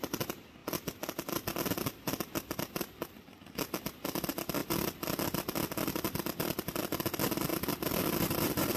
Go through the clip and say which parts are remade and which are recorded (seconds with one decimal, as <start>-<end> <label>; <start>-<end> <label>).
0.0-7.5 recorded; 7.5-8.2 remade; 8.2-8.8 recorded